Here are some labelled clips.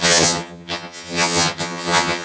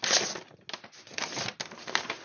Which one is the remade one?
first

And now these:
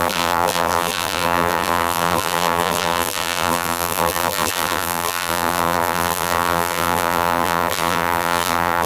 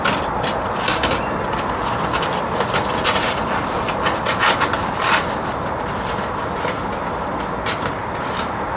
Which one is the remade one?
first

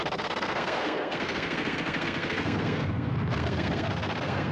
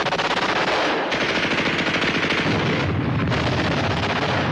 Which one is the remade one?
first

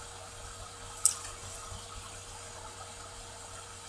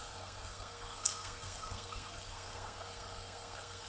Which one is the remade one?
second